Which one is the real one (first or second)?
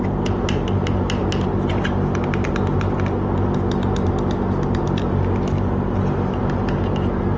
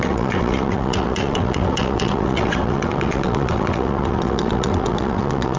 first